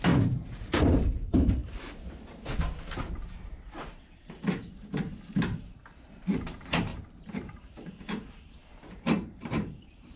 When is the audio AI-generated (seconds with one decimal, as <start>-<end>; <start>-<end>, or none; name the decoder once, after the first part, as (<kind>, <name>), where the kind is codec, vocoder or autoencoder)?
0.0-1.6 (vocoder, BigVGAN v2); 3.5-10.2